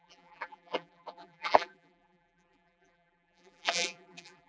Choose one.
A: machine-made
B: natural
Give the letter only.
A